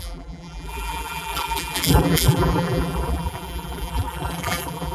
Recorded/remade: remade